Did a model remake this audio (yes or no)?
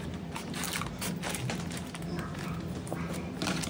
no